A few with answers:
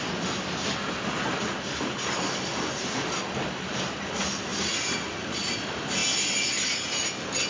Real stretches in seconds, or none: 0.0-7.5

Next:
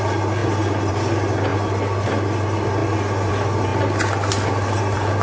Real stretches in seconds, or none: 0.0-5.2

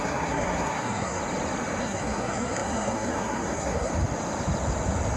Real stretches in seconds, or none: 1.2-1.8; 3.9-5.2

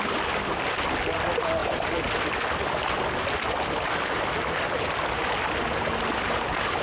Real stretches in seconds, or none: 0.0-6.8